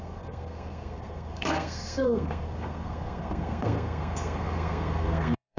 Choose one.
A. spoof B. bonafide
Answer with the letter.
A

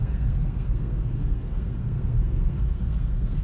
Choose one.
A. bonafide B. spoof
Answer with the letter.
B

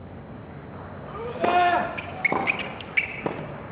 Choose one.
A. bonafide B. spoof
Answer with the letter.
A